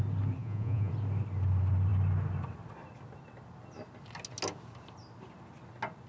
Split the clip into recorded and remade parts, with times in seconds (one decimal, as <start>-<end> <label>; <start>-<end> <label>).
0.0-0.4 recorded; 0.4-0.9 remade; 0.9-6.1 recorded